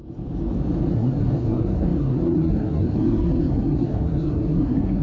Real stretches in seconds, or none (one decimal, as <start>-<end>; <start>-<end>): 0.0-0.9